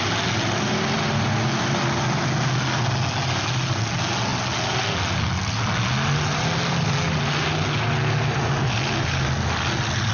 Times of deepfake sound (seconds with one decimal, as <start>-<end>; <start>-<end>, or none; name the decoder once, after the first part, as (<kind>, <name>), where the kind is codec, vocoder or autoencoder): none